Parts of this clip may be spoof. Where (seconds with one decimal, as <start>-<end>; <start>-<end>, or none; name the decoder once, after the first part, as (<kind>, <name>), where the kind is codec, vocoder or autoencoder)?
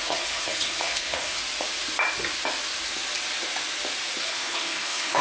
0.0-1.4 (codec, HILCodec); 4.2-5.2